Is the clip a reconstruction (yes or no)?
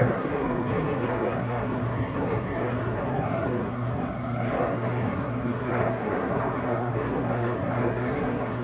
yes